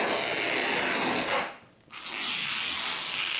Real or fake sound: real